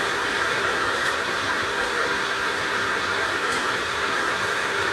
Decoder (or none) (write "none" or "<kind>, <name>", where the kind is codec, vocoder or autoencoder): codec, SNAC